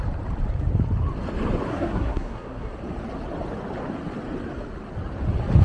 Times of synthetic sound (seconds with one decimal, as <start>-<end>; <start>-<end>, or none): 1.7-2.7